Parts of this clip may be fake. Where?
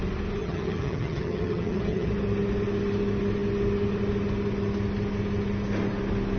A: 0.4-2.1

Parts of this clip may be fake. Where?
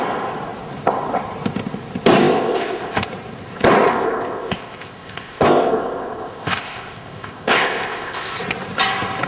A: 2.2-3.0; 3.9-8.4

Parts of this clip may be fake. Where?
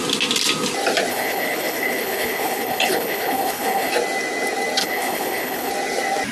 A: 1.1-3.9; 4.8-5.7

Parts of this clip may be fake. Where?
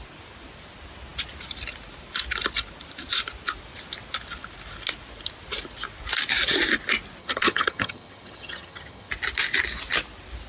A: 7.2-9.1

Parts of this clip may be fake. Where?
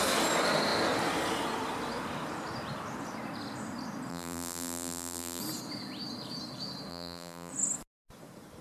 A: 4.1-5.4; 6.9-7.5